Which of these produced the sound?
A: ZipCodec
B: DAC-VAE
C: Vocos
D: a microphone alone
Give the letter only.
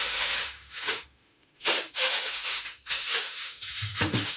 B